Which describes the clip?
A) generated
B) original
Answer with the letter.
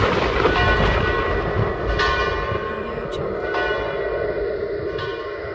B